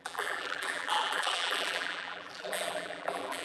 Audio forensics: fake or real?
fake